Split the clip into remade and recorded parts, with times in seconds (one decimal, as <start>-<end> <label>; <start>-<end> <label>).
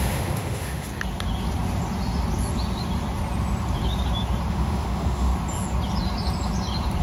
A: 0.0-0.9 remade; 0.9-4.5 recorded; 4.5-5.3 remade; 5.3-7.0 recorded